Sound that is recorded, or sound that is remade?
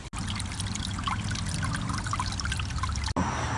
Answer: recorded